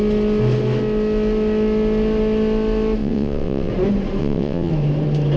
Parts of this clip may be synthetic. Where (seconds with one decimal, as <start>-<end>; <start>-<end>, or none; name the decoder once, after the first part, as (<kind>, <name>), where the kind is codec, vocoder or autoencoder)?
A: 3.0-3.7 (vocoder, WaveNeXt); 4.2-4.7